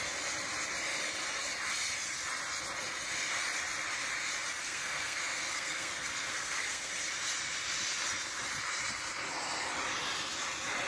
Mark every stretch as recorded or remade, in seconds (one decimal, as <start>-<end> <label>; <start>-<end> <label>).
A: 0.0-4.6 recorded; 4.6-6.9 remade; 6.9-10.9 recorded